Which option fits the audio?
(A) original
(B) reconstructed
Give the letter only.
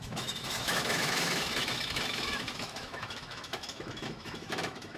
B